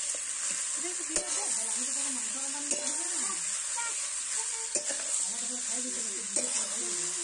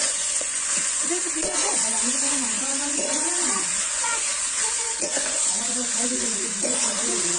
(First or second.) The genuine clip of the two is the first